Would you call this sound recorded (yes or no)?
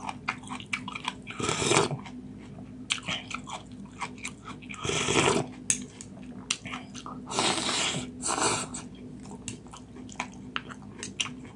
yes